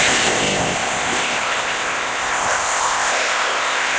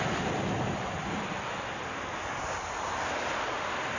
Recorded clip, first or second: second